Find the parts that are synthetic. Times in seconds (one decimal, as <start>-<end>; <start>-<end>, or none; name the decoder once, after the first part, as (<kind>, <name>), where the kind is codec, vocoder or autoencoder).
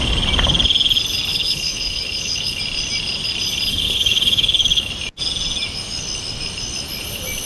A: 1.3-2.6 (codec, HILCodec); 3.7-4.9